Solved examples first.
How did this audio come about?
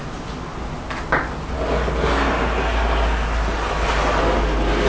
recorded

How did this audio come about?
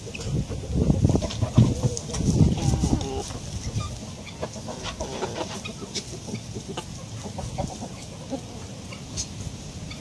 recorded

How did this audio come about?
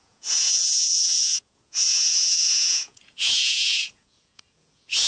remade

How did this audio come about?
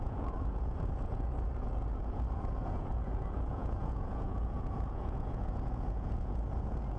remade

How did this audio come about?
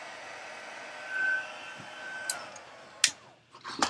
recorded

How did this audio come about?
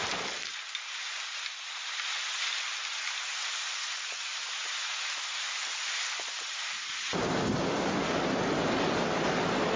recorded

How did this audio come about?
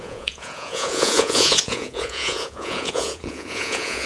remade